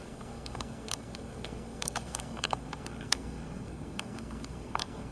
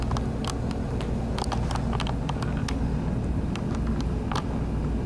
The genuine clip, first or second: second